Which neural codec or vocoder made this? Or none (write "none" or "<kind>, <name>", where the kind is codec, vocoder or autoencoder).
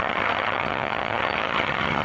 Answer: vocoder, HiFi-GAN